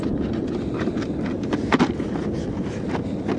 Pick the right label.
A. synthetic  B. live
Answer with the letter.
B